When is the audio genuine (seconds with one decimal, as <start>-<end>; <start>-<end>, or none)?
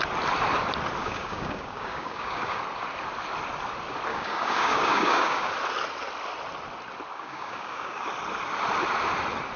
0.0-1.0; 2.6-4.1; 5.5-7.1; 8.1-9.6